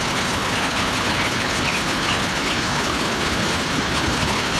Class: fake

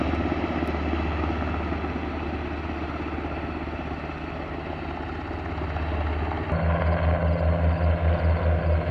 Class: real